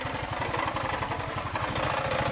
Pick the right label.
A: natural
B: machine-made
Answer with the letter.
A